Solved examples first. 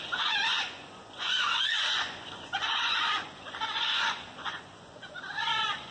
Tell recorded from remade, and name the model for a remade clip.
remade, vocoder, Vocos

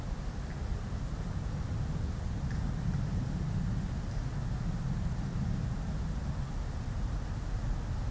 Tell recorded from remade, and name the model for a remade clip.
recorded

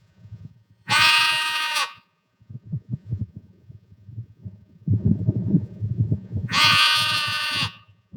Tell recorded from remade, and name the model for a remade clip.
remade, vocoder, Vocos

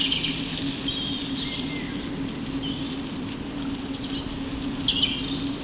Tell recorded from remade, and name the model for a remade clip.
recorded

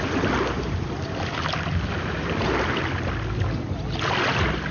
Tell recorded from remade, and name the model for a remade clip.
recorded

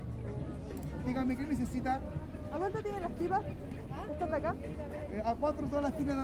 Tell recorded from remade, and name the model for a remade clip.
recorded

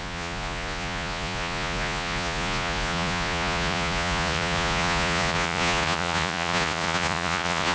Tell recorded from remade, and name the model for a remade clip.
remade, vocoder, Vocos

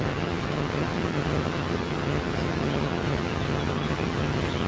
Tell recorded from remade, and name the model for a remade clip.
remade, vocoder, HiFi-GAN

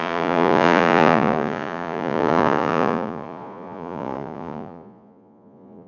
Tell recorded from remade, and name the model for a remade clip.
remade, vocoder, Vocos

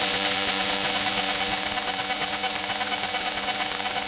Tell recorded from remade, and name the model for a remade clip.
remade, vocoder, Vocos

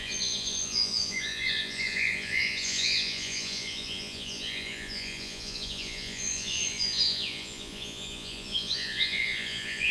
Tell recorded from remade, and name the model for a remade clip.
remade, vocoder, Vocos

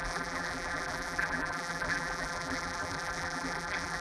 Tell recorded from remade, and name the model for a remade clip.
remade, vocoder, BigVGAN v2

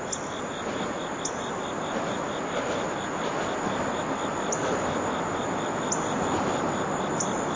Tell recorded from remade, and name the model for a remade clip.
recorded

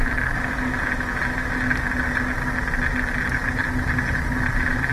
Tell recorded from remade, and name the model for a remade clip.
recorded